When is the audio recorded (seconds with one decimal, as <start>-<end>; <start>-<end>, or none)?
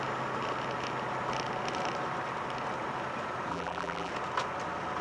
0.0-3.5; 4.1-5.0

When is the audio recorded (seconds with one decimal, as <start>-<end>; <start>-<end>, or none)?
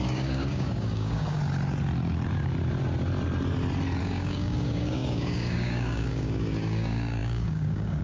1.4-4.0